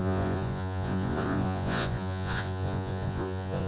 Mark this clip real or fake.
fake